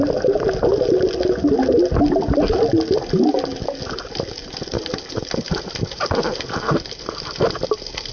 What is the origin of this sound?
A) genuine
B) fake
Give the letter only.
A